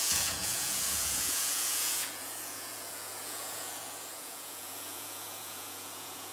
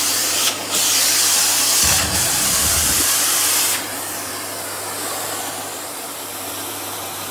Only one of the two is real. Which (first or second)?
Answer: second